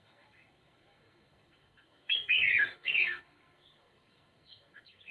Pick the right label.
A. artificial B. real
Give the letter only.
A